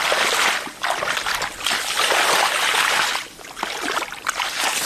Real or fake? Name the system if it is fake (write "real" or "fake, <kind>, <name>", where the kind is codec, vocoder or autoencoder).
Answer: real